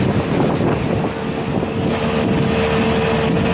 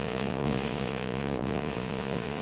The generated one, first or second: second